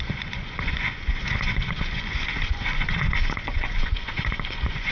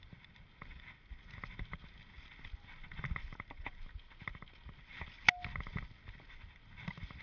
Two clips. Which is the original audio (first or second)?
second